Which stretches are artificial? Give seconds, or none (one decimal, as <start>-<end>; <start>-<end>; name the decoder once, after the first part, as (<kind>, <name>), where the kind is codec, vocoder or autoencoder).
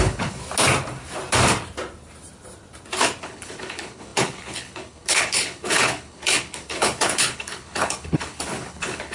0.0-0.4 (codec, HILCodec); 3.2-9.1